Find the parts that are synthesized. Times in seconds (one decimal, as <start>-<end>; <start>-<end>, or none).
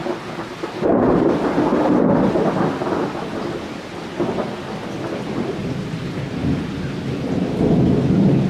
none